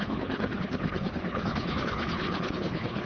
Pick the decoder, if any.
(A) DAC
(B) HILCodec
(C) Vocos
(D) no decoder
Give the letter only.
B